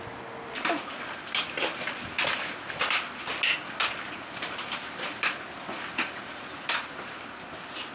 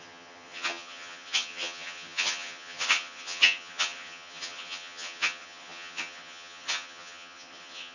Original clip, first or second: first